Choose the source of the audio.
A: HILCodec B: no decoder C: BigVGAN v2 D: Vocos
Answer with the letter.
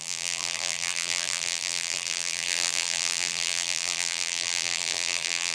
C